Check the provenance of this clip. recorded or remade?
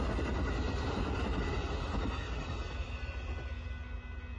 recorded